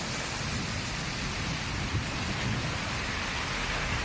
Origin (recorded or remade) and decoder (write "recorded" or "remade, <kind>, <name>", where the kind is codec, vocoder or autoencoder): recorded